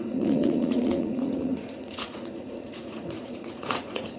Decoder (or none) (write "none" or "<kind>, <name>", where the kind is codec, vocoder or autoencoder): vocoder, Vocos